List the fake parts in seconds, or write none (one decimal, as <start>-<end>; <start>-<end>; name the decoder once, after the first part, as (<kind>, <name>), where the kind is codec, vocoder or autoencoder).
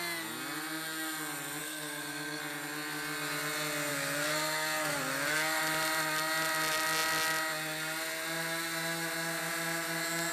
1.6-2.4 (codec, SNAC); 3.9-5.6